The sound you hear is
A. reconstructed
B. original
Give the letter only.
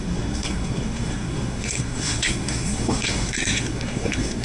A